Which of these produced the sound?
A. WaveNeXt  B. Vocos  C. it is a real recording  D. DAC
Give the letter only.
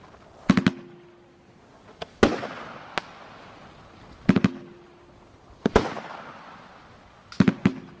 C